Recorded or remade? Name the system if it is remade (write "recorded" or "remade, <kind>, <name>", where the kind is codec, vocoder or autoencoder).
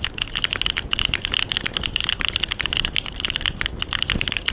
recorded